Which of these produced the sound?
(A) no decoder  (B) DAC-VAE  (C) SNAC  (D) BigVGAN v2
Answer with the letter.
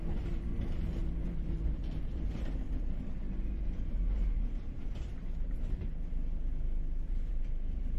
D